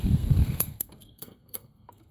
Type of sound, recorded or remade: remade